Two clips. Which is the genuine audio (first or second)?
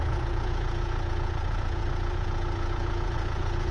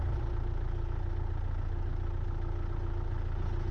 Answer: second